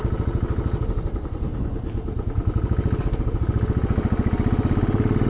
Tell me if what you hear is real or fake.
real